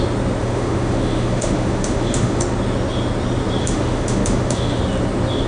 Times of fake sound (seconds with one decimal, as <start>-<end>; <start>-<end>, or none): 0.4-2.4; 3.6-4.8